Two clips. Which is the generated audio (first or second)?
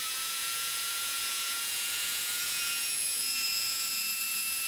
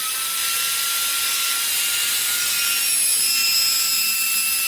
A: first